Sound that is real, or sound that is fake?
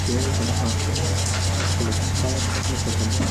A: real